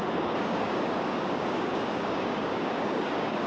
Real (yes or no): no